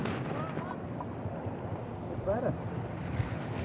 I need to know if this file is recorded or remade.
recorded